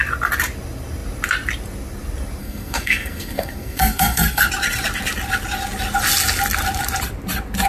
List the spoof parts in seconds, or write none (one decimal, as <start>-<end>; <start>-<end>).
2.4-4.5